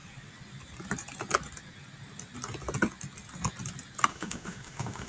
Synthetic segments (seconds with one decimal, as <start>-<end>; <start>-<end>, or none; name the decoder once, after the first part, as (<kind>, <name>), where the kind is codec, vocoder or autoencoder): 4.1-5.1 (autoencoder, DAC-VAE)